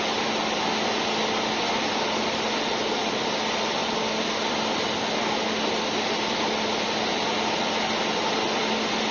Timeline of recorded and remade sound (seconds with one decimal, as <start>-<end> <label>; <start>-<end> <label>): 0.0-9.1 recorded